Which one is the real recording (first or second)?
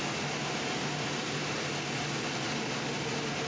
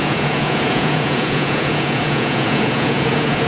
first